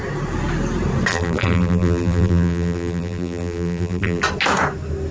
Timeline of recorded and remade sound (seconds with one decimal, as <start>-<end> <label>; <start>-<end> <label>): 0.0-1.1 recorded; 1.1-4.2 remade; 4.2-5.1 recorded